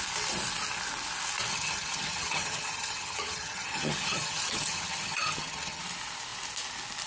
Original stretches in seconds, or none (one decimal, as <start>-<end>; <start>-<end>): 0.0-1.5; 5.8-7.1